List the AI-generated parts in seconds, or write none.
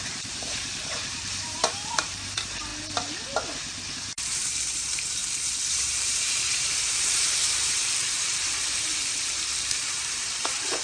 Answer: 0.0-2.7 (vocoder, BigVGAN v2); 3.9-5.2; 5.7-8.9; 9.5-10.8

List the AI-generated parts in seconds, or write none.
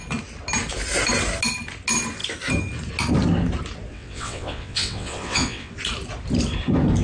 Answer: 3.9-5.7 (vocoder, WaveNeXt)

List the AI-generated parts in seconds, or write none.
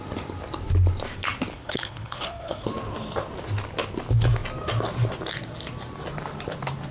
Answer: 1.5-2.7 (codec, HILCodec)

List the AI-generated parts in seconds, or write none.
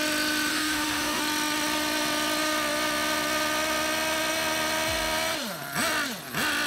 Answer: 0.5-1.2 (autoencoder, DAC-VAE)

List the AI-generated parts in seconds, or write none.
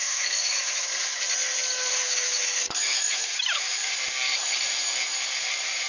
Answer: 0.0-0.9 (autoencoder, DAC-VAE); 1.9-3.9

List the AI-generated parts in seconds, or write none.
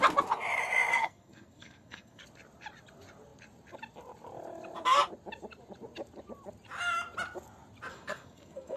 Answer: 0.9-2.2 (codec, SNAC); 7.9-8.8